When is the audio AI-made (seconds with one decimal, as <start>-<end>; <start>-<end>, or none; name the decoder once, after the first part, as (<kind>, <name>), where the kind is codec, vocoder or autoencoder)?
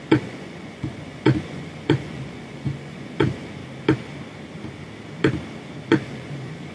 0.0-3.6 (vocoder, Vocos); 5.9-6.7